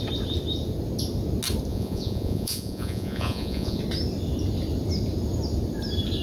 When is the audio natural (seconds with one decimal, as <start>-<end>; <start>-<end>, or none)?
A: 0.0-1.7; 3.8-6.2